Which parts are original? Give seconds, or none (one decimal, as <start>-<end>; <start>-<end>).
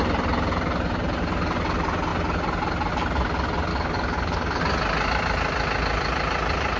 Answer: 0.0-3.7; 4.6-6.8